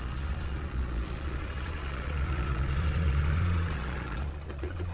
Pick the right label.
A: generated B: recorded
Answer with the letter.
A